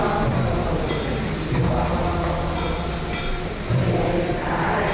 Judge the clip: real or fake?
real